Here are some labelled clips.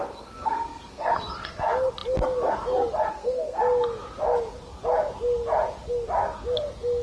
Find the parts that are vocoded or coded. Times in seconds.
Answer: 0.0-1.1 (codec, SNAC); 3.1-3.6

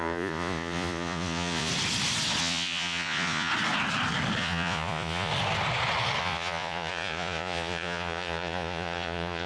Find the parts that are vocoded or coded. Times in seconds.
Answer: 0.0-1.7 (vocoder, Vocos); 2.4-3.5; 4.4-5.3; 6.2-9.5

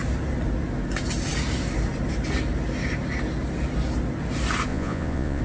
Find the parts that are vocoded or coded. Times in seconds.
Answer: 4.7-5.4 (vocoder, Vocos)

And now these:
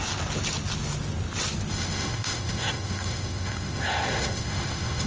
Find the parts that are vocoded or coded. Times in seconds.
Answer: 1.7-5.1 (autoencoder, DAC-VAE)

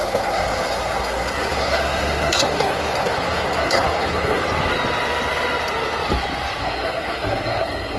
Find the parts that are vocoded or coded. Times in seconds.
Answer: 0.0-4.4 (codec, SNAC); 6.6-8.0

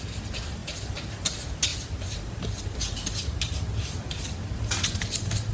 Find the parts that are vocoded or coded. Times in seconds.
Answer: none